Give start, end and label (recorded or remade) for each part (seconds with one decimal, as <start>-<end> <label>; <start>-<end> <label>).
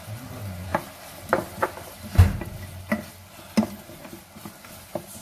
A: 0.0-5.2 recorded